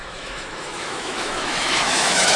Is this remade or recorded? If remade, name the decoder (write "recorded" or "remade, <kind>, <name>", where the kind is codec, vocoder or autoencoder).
remade, autoencoder, DAC-VAE